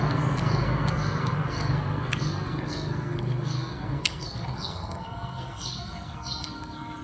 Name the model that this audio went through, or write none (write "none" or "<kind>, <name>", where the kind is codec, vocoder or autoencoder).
codec, SNAC